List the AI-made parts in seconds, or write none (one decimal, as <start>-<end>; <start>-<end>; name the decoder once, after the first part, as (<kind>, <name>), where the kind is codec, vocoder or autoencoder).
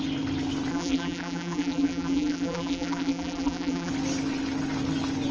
0.7-3.9 (vocoder, BigVGAN v2)